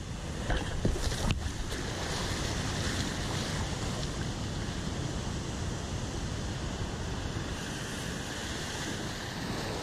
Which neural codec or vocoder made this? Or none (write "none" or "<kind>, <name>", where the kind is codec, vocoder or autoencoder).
none